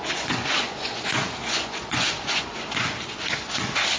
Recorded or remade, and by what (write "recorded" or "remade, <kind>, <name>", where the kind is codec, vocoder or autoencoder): remade, vocoder, Vocos